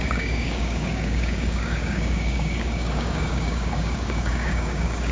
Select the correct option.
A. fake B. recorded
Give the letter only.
A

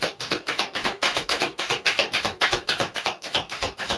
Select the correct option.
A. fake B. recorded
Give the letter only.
A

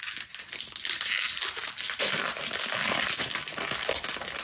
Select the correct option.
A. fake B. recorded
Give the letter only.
B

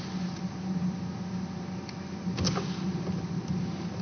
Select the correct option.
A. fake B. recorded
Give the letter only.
B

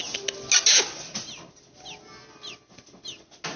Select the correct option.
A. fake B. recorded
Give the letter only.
B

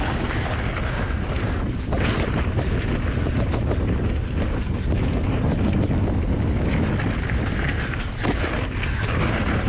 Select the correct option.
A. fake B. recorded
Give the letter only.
B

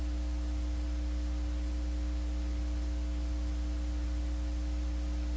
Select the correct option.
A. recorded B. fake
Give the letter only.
A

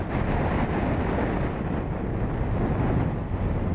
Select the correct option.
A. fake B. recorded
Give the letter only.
B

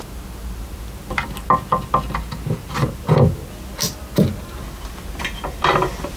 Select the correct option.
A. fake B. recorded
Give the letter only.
B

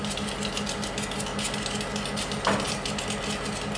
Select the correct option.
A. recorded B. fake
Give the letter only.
A